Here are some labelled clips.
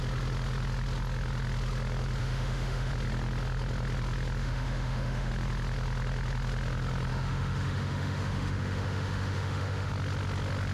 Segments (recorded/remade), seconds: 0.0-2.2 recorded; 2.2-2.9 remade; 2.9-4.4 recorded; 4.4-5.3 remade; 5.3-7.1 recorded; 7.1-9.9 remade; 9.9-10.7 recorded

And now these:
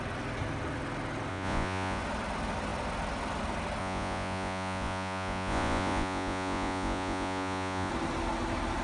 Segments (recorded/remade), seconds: 0.0-1.3 recorded; 1.3-2.0 remade; 2.0-3.8 recorded; 3.8-7.9 remade; 7.9-8.8 recorded

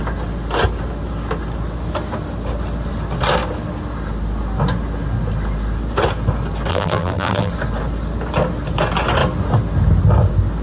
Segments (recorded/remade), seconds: 0.0-6.7 recorded; 6.7-7.5 remade; 7.5-10.6 recorded

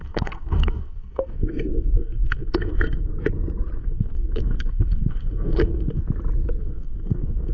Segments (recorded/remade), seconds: 0.0-3.1 remade; 3.1-3.8 recorded; 3.8-6.0 remade; 6.0-6.6 recorded; 6.6-7.5 remade

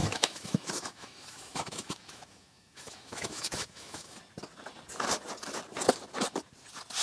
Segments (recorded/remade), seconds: 0.0-4.2 remade; 4.2-7.0 recorded

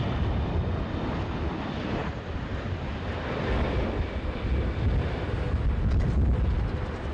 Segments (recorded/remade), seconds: 0.0-7.1 recorded